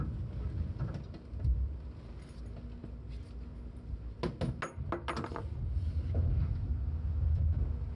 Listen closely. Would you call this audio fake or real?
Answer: real